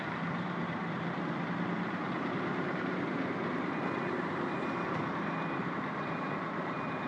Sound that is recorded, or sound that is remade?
remade